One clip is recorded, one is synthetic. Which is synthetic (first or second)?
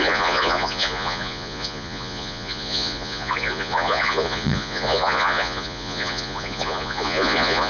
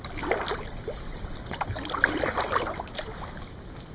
first